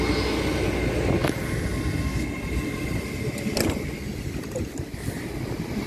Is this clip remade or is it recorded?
recorded